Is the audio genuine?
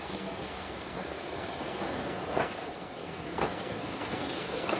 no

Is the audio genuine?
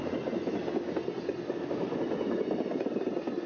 yes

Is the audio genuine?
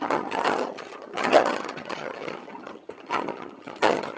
no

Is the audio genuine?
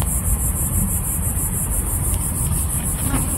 yes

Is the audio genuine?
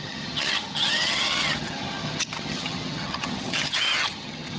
no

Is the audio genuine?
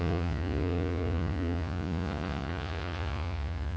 no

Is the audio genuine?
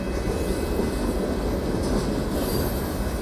yes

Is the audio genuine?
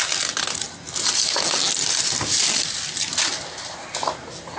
yes